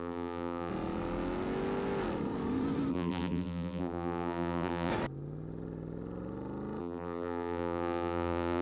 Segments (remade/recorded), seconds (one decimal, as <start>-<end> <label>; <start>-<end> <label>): 0.0-0.7 remade; 0.7-2.9 recorded; 2.9-4.9 remade; 4.9-6.8 recorded; 6.8-8.6 remade